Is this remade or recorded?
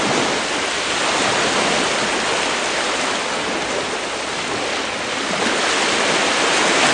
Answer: recorded